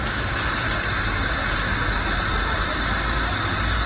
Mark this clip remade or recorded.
recorded